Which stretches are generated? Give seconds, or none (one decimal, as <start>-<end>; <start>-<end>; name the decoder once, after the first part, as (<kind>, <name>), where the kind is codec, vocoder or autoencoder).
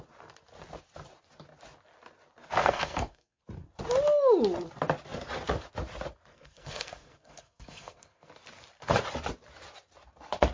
2.6-3.4 (codec, SNAC); 6.3-8.3